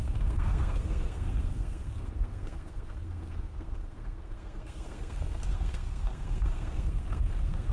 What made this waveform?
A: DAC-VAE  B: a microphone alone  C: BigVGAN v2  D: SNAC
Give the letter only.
D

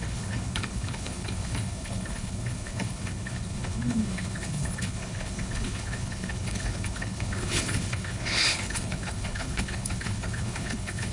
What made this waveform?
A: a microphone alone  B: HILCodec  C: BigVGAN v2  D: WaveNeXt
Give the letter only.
B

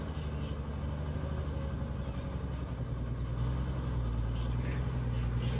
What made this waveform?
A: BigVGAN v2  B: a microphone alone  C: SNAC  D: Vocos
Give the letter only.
B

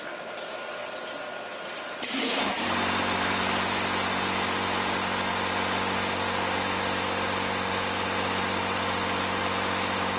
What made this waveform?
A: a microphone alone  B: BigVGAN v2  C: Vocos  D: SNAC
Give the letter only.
A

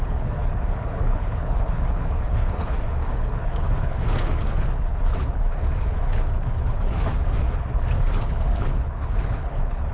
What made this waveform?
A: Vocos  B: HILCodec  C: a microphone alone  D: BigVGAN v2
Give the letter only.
B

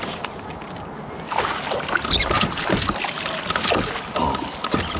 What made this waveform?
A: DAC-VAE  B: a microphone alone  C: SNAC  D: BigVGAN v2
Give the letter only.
B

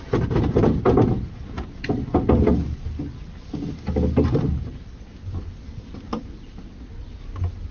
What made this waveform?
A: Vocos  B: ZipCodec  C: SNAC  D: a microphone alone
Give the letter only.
D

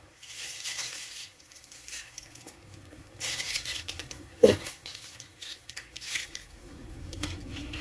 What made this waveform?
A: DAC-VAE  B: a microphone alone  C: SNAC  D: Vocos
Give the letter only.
C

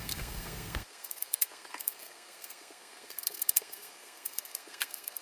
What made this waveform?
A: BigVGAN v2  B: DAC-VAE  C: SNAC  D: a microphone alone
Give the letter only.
C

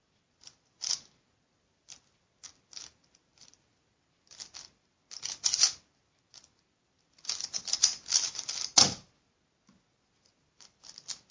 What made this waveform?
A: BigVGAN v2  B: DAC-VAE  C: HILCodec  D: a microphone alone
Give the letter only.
D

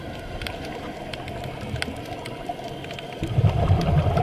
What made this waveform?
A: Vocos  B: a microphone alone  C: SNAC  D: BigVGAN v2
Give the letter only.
B